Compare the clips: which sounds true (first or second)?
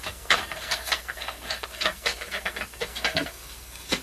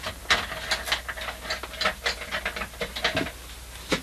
second